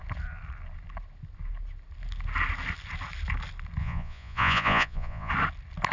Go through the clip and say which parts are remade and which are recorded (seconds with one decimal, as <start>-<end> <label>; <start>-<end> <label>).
0.0-3.8 recorded; 3.8-5.3 remade; 5.3-5.9 recorded